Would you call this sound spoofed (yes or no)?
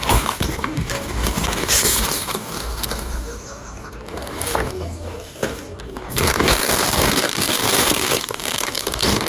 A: yes